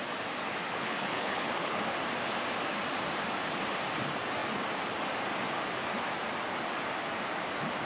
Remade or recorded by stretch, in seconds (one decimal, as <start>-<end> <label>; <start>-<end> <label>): 0.0-0.7 recorded; 0.7-1.8 remade; 1.8-7.9 recorded